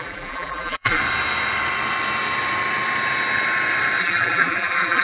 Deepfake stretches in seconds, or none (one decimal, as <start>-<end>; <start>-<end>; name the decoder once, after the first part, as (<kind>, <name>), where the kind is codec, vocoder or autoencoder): 0.0-1.0 (vocoder, BigVGAN v2); 4.0-5.0